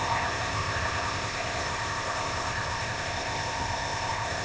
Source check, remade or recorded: remade